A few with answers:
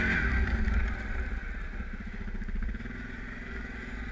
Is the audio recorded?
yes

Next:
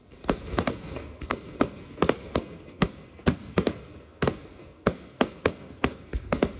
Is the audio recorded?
no